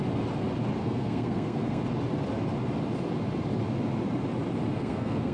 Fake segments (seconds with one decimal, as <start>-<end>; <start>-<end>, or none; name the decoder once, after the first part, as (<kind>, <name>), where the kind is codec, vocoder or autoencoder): 0.8-1.8 (codec, SNAC); 4.7-5.3